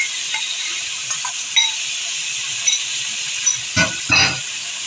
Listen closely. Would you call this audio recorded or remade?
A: recorded